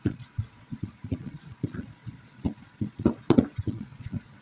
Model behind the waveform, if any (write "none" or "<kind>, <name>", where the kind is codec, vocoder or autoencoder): vocoder, Vocos